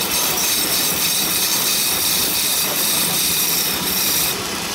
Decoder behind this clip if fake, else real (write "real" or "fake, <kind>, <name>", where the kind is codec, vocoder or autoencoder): fake, vocoder, BigVGAN v2